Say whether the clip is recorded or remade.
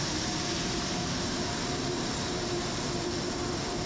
remade